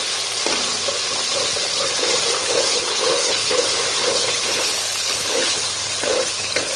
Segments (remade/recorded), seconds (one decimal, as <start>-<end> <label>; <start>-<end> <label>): 0.0-2.4 recorded; 2.4-6.8 remade